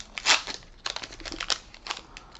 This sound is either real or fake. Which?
real